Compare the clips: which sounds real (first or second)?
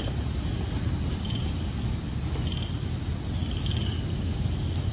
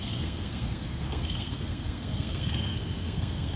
first